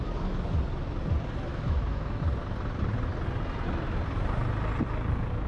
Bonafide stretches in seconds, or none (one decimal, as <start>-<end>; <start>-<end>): 0.0-1.5; 2.2-5.5